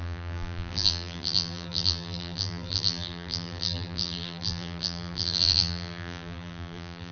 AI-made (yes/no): yes